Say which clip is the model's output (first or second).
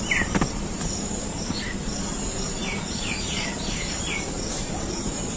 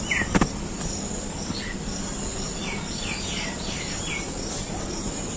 first